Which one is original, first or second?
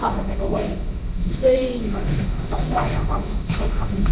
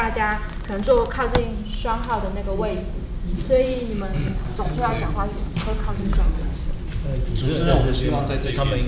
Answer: second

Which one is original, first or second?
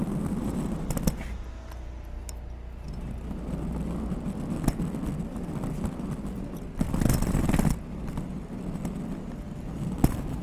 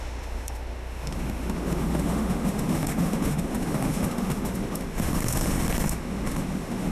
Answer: first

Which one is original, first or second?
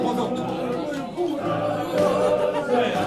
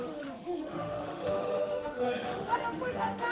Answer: first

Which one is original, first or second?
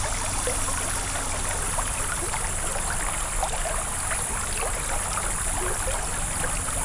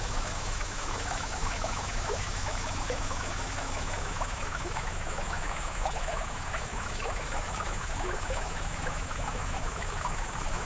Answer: first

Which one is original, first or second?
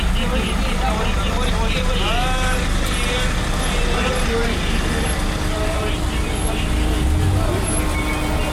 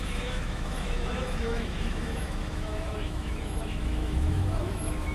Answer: first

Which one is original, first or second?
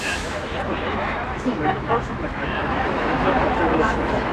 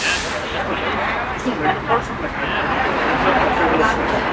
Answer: second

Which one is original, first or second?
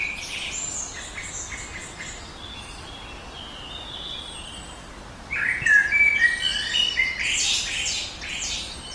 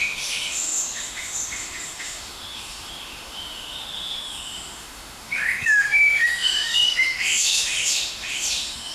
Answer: first